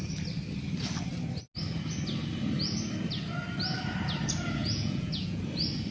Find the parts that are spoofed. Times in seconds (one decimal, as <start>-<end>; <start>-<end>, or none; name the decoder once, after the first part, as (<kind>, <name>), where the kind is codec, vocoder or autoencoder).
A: 4.6-5.4 (vocoder, Vocos)